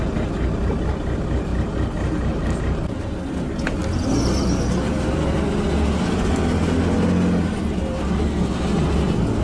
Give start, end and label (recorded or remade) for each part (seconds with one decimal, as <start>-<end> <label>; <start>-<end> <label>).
0.0-9.4 recorded